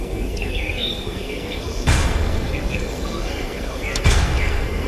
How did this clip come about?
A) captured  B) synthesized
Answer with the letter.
B